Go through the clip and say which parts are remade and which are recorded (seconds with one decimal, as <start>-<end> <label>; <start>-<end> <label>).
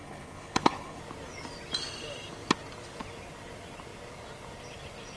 0.0-1.0 remade; 1.0-5.2 recorded